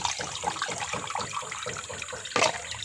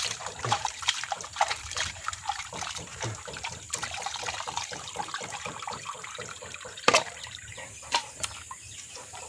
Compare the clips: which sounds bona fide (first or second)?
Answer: first